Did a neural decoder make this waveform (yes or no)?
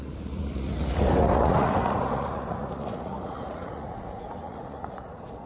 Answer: yes